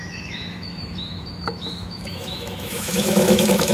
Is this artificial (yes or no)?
yes